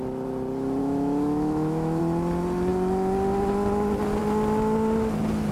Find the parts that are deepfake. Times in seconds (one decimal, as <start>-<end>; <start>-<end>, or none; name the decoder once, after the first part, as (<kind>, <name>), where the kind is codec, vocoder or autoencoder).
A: 0.8-2.0 (autoencoder, DAC-VAE)